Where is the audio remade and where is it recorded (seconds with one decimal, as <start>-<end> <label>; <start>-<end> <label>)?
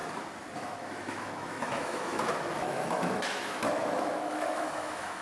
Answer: 0.0-0.6 recorded; 0.6-5.2 remade